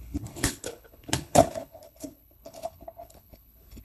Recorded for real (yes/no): no